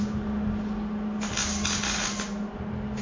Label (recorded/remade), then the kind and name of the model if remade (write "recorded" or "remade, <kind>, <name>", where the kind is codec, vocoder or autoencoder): recorded